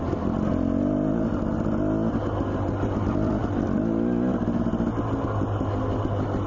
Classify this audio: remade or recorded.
recorded